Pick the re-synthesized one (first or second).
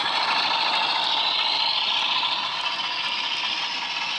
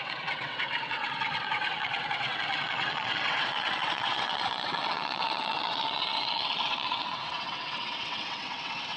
second